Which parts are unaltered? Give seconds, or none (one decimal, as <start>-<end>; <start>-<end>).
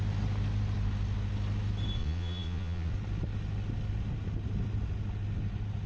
0.0-2.0; 2.9-5.9